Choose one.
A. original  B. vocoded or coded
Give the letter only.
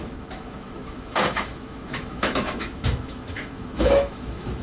B